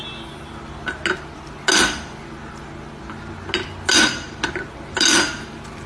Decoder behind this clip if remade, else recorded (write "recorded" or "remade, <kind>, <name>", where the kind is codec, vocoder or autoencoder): recorded